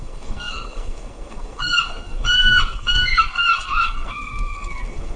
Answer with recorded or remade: remade